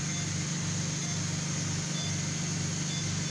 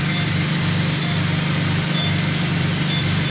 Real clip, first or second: first